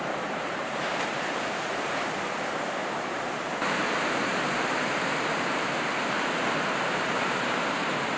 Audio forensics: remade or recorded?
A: remade